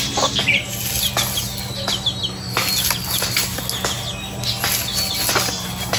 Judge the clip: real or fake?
real